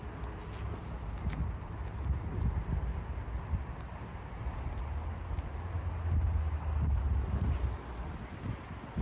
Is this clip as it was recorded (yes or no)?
yes